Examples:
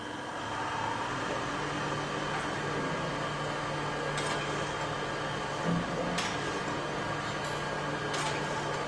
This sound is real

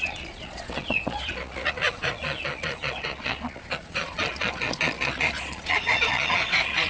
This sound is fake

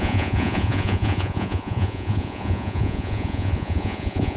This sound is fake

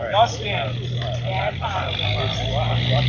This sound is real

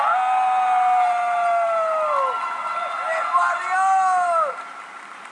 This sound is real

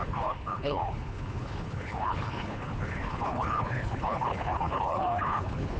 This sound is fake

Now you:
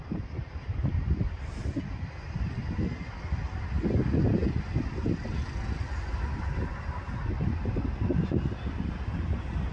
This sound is real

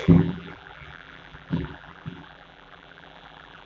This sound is fake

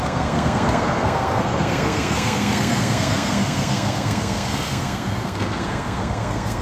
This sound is fake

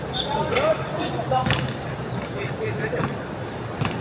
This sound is real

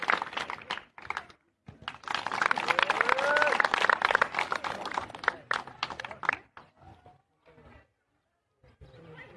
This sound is real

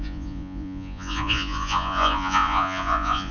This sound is fake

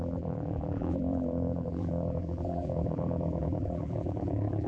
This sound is fake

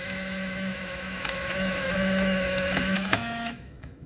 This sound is fake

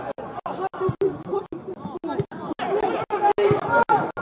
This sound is real